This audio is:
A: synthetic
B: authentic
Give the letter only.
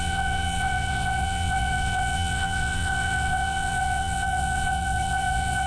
A